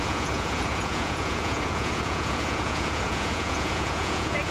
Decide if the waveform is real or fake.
fake